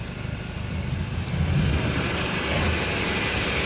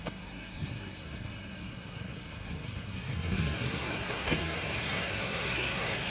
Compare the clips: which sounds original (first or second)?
first